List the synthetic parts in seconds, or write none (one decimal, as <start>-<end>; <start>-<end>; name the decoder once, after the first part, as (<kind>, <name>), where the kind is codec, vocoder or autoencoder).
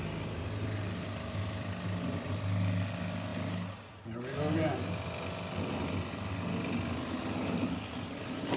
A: none